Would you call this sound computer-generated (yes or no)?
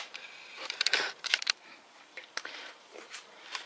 yes